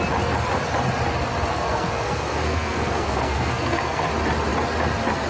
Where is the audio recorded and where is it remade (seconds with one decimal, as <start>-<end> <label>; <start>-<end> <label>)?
0.0-1.5 recorded; 1.5-4.1 remade; 4.1-5.3 recorded